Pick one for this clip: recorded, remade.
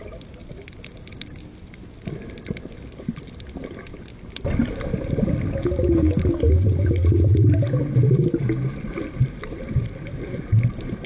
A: recorded